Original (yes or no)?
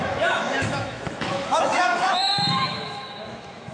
no